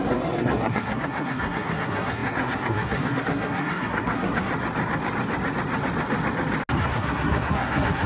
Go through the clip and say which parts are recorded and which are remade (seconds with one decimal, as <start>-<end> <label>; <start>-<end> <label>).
0.0-4.5 remade; 4.5-6.8 recorded; 6.8-8.1 remade